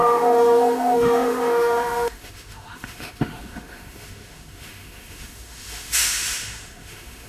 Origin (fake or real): fake